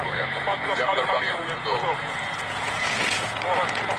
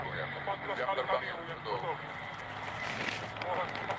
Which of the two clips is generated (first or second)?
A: first